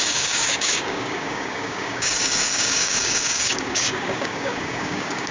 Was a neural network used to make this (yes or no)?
yes